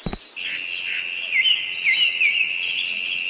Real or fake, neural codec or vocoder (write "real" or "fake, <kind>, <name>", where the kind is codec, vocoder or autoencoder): real